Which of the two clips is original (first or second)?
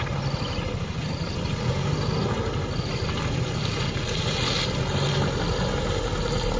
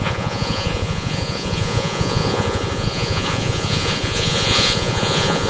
first